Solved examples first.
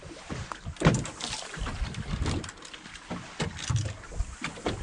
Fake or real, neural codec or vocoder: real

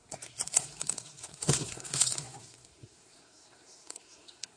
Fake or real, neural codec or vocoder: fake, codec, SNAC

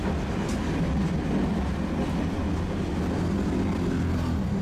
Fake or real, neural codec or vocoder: real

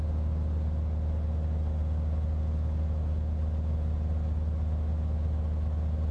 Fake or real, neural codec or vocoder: real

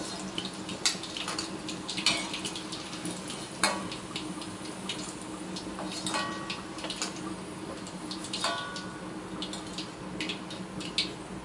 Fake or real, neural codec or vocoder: real